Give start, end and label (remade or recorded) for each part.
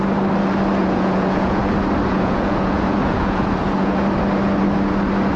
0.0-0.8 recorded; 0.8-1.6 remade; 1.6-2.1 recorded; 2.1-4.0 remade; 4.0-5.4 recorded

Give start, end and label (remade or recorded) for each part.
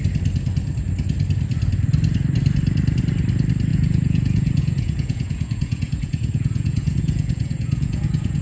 0.0-3.7 recorded; 3.7-8.4 remade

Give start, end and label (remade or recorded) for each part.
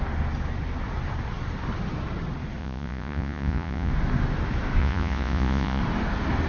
0.0-2.6 recorded; 2.6-3.9 remade; 3.9-4.8 recorded; 4.8-5.8 remade; 5.8-6.5 recorded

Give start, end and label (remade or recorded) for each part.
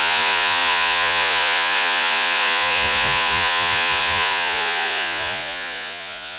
0.0-6.4 remade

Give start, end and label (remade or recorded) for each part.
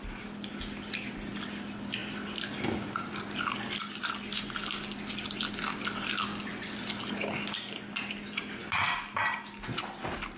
0.0-10.4 recorded